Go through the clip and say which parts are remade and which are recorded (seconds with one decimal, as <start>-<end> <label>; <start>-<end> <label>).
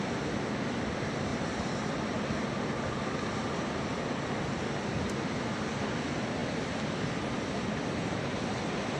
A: 0.0-1.3 recorded; 1.3-2.3 remade; 2.3-6.4 recorded; 6.4-8.4 remade; 8.4-9.0 recorded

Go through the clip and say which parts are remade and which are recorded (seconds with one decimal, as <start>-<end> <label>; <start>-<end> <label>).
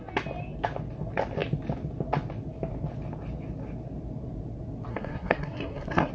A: 0.0-4.9 recorded; 4.9-6.1 remade